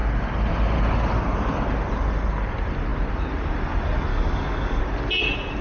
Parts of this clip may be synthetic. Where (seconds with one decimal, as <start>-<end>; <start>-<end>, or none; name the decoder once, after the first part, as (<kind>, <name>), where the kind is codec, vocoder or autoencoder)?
4.1-4.8 (codec, DAC)